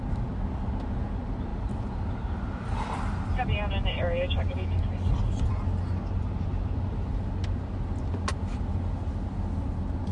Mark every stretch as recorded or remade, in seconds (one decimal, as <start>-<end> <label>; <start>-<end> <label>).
0.0-10.1 recorded